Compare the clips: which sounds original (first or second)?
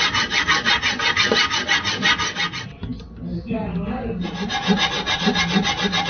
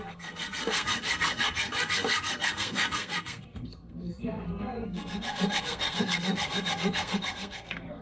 first